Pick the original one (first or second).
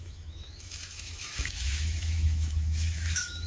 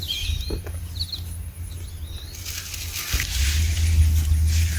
second